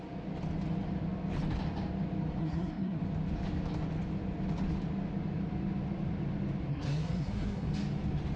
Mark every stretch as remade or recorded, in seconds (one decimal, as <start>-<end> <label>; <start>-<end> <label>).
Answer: 0.0-2.4 recorded; 2.4-3.0 remade; 3.0-6.7 recorded; 6.7-7.7 remade; 7.7-8.4 recorded